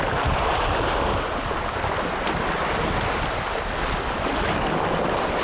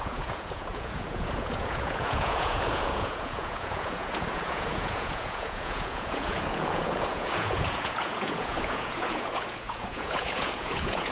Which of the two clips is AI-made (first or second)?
second